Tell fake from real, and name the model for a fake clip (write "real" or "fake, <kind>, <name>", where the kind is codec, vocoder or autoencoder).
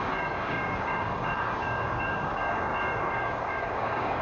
fake, codec, DAC